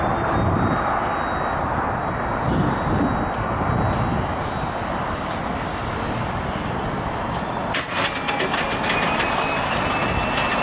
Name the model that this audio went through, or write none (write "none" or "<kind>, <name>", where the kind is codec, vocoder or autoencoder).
none